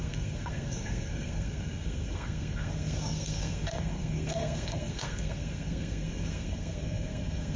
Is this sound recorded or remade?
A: remade